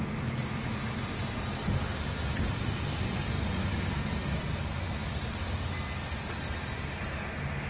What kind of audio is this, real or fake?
real